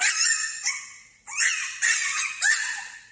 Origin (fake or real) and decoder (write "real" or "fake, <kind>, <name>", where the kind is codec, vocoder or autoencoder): fake, vocoder, Vocos